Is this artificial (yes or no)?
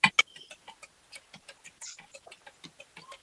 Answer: no